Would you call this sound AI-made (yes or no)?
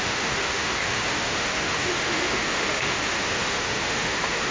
yes